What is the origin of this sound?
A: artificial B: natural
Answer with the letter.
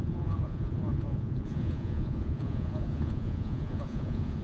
A